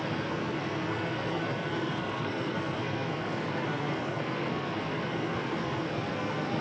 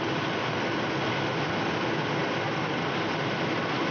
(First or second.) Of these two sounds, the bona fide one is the second